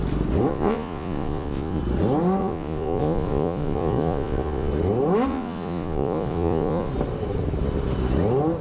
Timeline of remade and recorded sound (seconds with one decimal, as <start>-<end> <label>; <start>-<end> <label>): 0.0-0.5 recorded; 0.5-1.8 remade; 1.8-2.4 recorded; 2.4-4.7 remade; 4.7-5.3 recorded; 5.3-6.9 remade; 6.9-8.6 recorded